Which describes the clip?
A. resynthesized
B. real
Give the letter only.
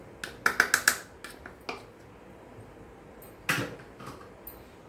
B